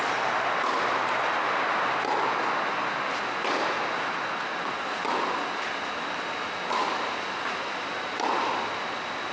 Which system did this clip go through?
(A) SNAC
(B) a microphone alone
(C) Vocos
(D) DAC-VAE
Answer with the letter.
B